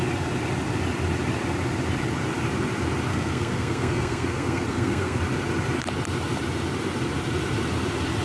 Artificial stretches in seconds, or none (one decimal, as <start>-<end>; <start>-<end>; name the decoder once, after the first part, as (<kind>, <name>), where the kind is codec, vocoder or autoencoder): 3.1-5.2 (codec, SNAC)